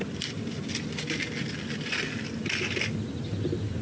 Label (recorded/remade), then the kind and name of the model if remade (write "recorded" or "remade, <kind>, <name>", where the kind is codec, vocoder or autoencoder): recorded